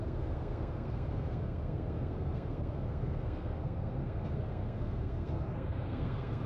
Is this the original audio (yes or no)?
no